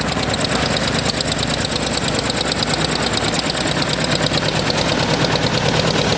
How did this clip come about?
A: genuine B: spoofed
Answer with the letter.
A